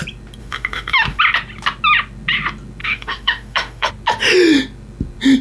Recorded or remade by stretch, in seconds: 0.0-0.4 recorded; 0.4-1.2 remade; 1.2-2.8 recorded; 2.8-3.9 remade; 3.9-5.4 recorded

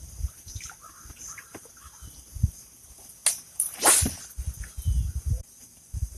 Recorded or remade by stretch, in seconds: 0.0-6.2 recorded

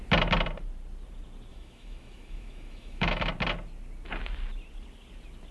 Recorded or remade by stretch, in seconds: 0.0-1.5 recorded; 1.5-3.3 remade; 3.3-5.5 recorded

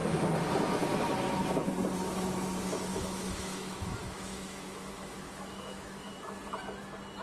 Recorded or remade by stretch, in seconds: 0.0-2.9 recorded; 2.9-6.1 remade; 6.1-7.2 recorded

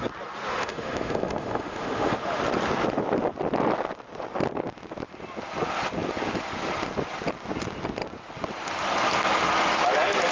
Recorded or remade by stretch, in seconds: 0.0-0.5 recorded; 0.5-2.4 remade; 2.4-10.3 recorded